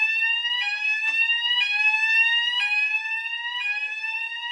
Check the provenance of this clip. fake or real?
fake